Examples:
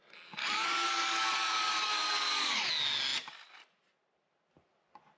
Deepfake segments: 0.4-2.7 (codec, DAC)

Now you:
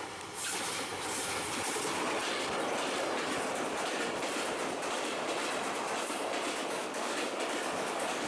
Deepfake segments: 6.6-8.3 (codec, DAC)

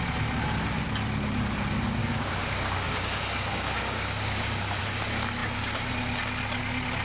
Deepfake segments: 2.0-4.8 (codec, DAC)

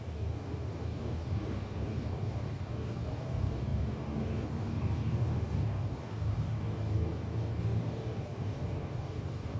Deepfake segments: 0.0-9.6 (codec, DAC)

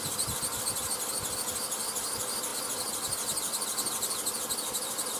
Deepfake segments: none

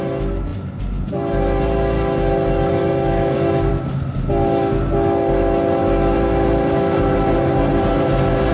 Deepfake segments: 2.8-3.7 (codec, DAC)

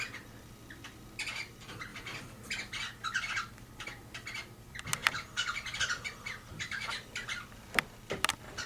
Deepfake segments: none

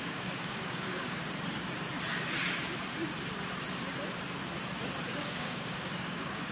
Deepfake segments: 0.0-1.2 (codec, DAC); 5.1-6.5